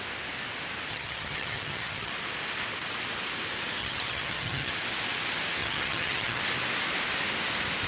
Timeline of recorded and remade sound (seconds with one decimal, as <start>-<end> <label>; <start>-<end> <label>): 0.0-0.9 recorded; 0.9-2.1 remade; 2.1-3.8 recorded; 3.8-4.7 remade; 4.7-5.6 recorded; 5.6-6.4 remade; 6.4-7.9 recorded